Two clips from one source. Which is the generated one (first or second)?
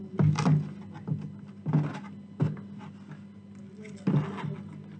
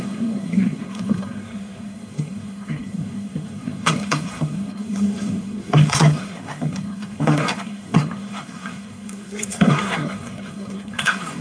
second